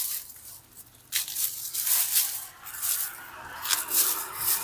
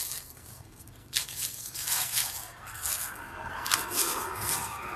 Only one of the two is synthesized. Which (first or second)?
second